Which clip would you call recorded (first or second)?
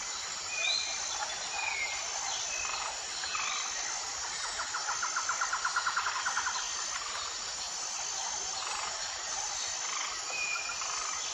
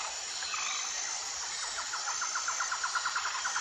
first